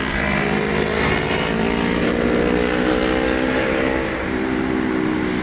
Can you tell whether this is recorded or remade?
recorded